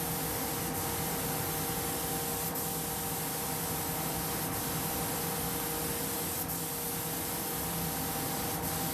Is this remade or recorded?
recorded